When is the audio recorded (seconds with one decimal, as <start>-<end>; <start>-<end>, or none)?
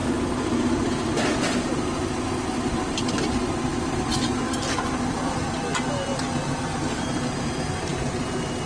0.0-8.7